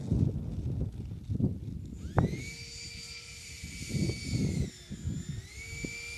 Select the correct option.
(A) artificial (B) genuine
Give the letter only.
B